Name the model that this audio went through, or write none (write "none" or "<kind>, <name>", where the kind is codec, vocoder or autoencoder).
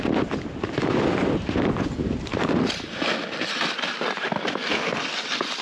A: none